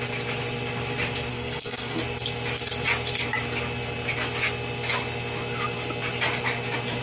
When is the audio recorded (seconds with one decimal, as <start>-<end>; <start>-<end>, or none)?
0.0-1.3; 2.0-7.0